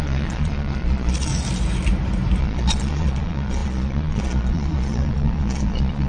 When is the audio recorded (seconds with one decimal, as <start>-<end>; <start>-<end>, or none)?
1.3-2.4